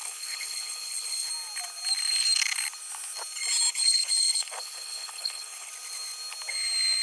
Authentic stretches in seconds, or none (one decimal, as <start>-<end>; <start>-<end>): 1.3-3.7; 5.7-7.0